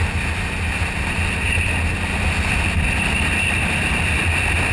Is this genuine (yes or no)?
yes